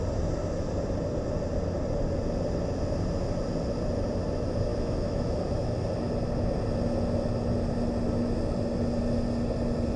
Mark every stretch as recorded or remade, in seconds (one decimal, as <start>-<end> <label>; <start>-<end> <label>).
0.0-4.7 recorded; 4.7-5.7 remade; 5.7-10.0 recorded